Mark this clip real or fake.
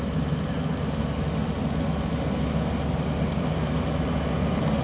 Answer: real